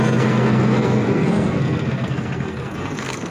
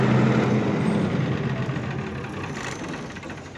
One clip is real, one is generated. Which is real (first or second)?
second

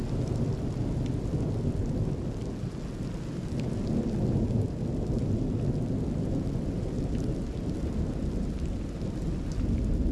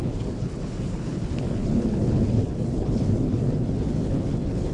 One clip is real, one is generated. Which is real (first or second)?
first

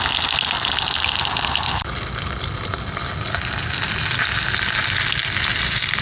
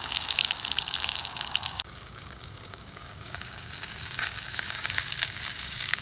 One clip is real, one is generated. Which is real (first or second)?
first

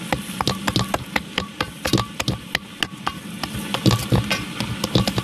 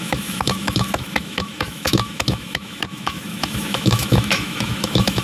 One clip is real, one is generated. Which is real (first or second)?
first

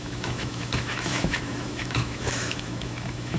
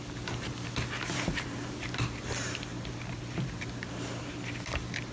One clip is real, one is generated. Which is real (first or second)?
second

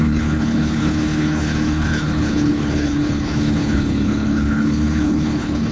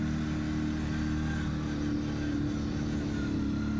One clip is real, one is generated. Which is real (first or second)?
second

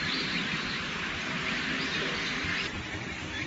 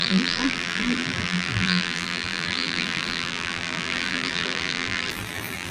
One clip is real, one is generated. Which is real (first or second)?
first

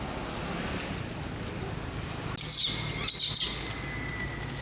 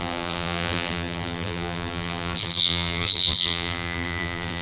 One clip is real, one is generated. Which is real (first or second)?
first